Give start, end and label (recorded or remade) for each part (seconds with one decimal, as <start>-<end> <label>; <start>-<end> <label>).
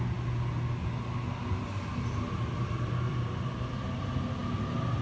0.0-5.0 recorded